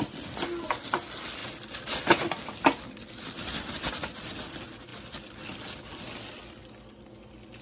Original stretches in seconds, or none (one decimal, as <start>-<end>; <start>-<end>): 0.0-7.6